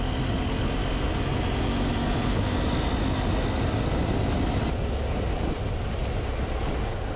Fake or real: real